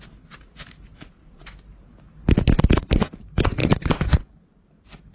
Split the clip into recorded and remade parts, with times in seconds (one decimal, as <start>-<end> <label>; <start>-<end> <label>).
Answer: 0.0-5.1 recorded